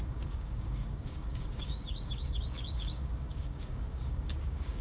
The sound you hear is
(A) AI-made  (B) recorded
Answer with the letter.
A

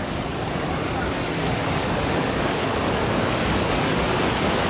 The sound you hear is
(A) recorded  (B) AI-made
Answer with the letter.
B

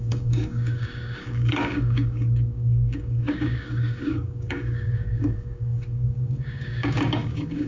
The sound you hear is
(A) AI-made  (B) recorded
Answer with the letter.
A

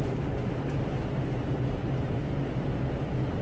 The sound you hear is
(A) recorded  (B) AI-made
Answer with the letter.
A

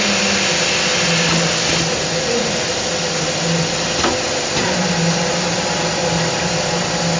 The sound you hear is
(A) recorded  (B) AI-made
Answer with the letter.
A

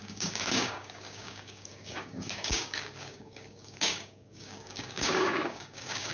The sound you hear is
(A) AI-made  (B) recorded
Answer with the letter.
A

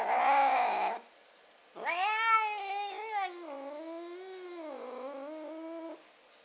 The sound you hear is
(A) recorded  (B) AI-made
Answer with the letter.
A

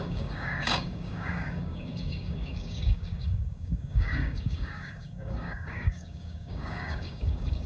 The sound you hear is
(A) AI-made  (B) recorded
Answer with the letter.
A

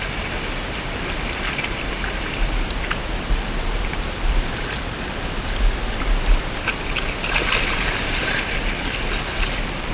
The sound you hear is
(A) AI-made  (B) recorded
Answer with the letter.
B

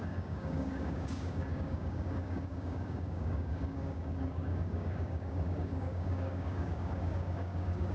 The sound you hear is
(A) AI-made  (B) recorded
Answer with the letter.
A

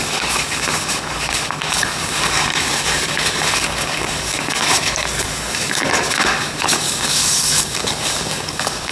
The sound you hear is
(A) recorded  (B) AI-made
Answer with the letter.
B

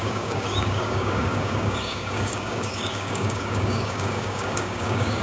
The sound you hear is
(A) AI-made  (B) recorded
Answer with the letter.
A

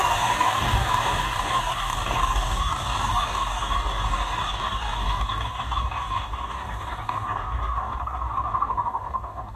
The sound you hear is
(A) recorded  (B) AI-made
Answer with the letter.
B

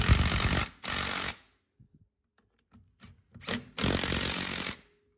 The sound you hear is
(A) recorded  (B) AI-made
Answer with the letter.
A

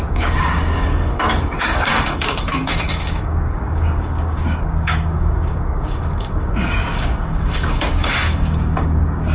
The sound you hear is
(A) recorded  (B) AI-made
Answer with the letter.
B